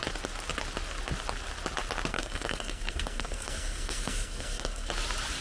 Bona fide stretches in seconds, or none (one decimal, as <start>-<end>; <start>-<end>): 0.0-2.1; 4.9-5.4